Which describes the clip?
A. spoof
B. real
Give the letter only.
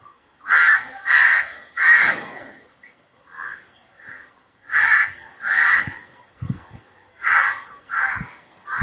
A